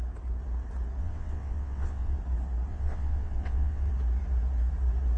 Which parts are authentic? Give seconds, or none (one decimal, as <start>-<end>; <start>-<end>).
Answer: 0.0-1.0; 2.2-2.7; 3.9-5.2